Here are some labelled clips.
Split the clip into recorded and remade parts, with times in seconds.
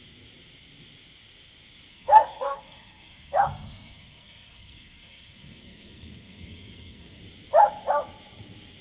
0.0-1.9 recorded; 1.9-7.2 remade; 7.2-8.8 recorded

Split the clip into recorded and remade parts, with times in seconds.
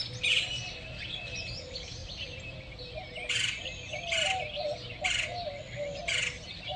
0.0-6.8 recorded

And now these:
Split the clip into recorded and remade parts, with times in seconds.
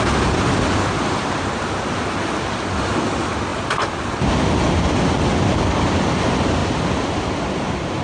0.0-6.6 recorded; 6.6-7.3 remade; 7.3-8.0 recorded